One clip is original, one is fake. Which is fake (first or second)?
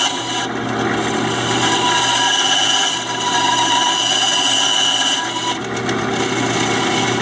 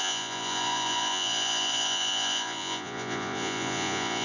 second